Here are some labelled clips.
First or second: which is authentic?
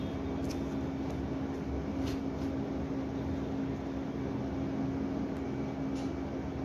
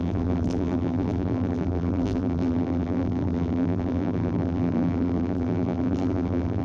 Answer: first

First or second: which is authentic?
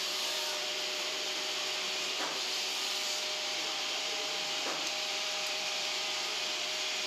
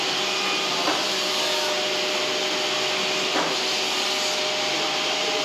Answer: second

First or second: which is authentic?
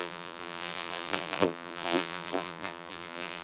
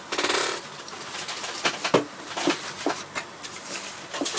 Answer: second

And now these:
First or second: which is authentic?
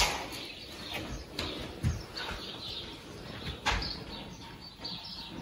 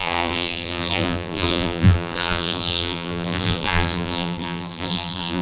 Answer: first